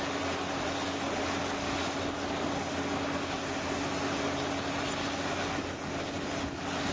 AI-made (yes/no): no